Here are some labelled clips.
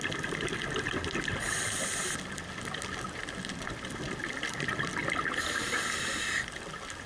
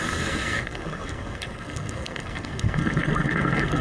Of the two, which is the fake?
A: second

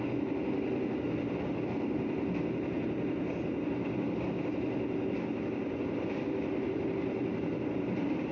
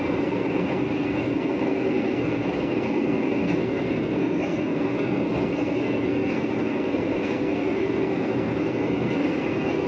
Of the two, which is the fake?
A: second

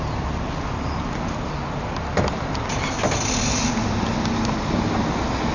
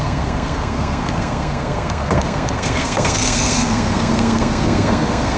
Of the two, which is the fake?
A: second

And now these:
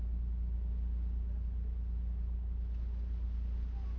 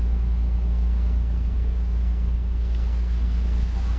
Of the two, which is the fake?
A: second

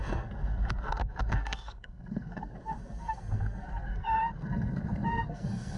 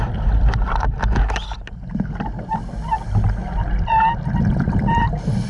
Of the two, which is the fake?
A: first